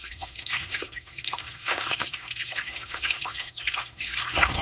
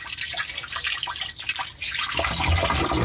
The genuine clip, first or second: second